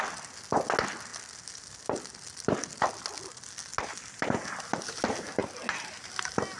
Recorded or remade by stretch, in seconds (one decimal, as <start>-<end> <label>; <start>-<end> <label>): 0.0-6.6 recorded